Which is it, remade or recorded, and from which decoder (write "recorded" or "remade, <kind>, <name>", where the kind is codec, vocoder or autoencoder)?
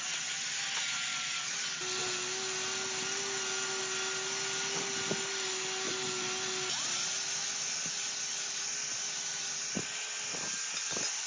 recorded